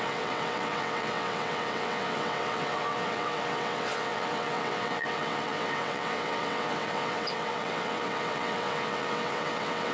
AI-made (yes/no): yes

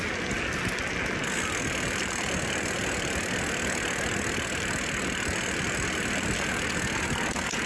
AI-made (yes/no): no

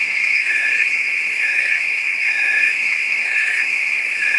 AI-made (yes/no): yes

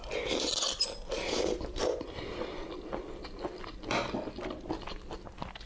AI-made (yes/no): no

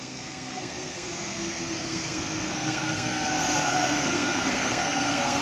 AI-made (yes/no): yes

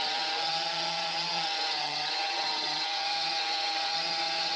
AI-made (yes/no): yes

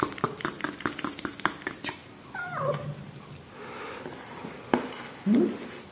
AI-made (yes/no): no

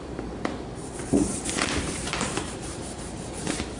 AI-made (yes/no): yes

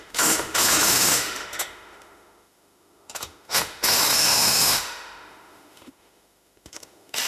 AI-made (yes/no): yes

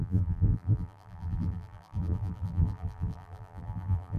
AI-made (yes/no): yes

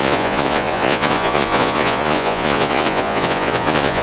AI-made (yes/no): yes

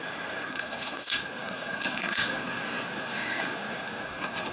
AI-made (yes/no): yes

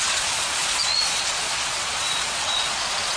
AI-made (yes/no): yes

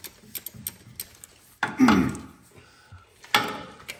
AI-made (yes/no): no